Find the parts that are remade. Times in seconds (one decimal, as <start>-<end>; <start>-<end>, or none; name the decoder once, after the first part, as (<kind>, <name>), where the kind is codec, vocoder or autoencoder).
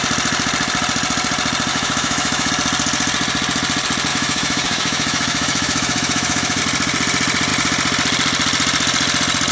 1.7-2.5 (autoencoder, DAC-VAE); 4.1-6.6